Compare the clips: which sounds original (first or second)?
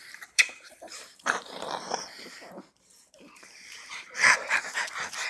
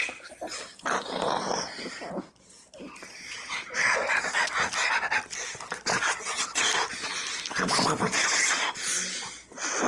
second